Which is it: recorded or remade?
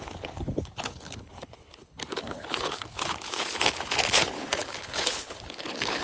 remade